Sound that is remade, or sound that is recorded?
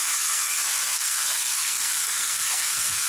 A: remade